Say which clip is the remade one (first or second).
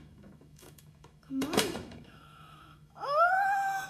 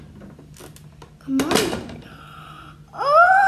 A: first